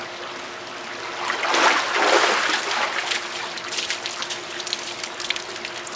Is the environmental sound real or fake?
real